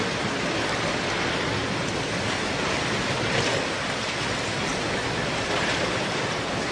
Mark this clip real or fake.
fake